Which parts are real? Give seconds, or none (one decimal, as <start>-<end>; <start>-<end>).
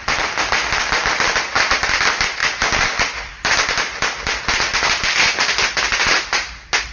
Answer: 0.0-6.9